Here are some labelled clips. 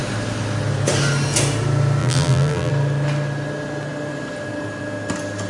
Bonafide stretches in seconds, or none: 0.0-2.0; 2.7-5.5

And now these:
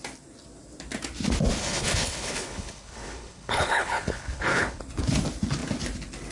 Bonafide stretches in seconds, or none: 0.0-1.6; 4.8-6.3